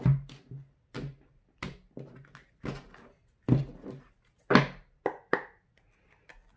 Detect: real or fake real